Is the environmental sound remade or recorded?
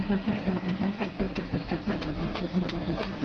remade